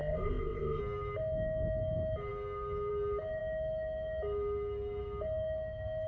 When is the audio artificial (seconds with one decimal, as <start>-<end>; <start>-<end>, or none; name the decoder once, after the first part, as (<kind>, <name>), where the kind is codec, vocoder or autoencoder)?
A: 0.0-0.8 (codec, ZipCodec)